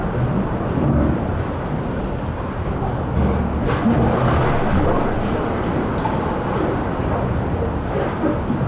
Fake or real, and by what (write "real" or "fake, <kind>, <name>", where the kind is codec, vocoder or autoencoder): real